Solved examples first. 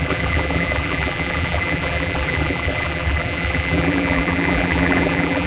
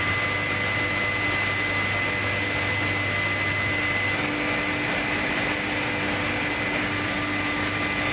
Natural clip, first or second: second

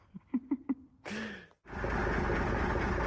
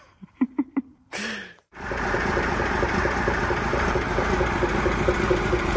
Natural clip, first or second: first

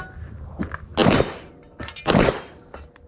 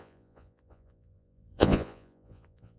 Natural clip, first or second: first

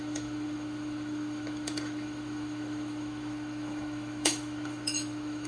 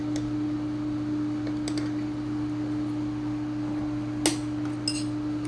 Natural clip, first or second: second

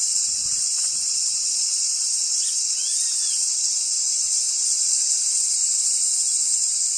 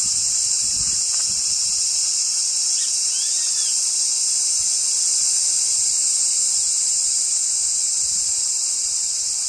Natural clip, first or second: second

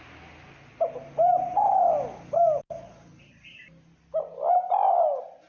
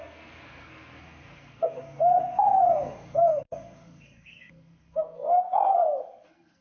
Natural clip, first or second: first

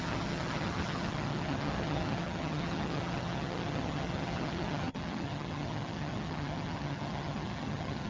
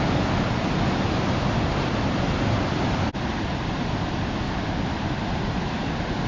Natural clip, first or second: second